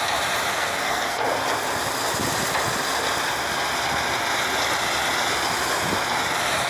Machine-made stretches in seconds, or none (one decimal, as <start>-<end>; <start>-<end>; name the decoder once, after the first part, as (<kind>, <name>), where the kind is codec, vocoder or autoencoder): 0.5-1.2 (codec, SNAC)

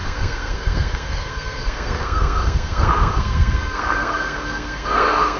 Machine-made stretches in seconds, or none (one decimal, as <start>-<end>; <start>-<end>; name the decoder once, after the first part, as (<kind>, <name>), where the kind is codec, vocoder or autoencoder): 0.0-5.4 (codec, SNAC)